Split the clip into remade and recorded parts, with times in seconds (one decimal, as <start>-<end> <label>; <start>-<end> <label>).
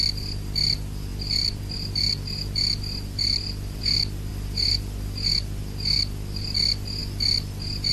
0.0-1.1 recorded; 1.1-3.8 remade; 3.8-7.9 recorded